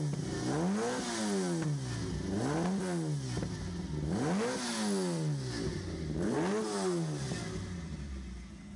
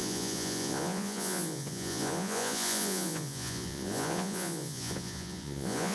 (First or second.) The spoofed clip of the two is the second